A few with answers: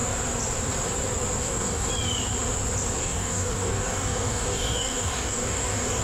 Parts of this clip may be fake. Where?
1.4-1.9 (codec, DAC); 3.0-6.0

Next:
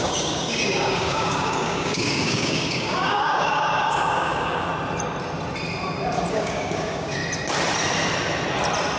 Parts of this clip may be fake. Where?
0.0-4.7 (codec, DAC); 6.3-7.2

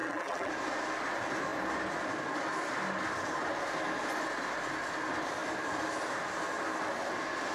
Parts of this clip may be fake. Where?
0.0-0.5 (vocoder, BigVGAN v2)

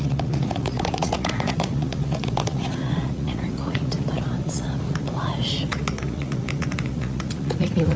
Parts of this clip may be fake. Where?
0.0-8.0 (vocoder, Vocos)

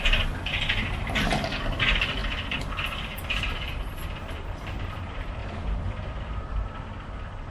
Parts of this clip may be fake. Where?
0.0-2.2 (vocoder, BigVGAN v2); 2.8-5.4